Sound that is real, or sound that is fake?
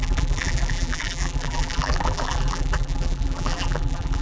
fake